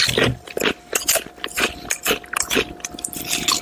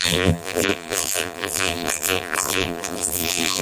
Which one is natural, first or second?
first